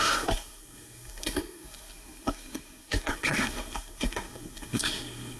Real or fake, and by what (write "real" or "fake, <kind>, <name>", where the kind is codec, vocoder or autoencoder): fake, codec, SNAC